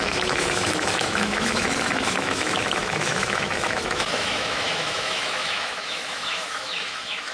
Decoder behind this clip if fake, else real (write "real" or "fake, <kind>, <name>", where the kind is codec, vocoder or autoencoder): fake, autoencoder, DAC-VAE